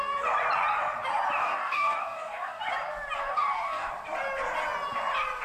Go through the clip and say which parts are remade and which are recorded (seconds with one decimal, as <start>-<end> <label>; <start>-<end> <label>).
0.0-1.4 recorded; 1.4-2.6 remade; 2.6-3.2 recorded; 3.2-3.9 remade; 3.9-5.4 recorded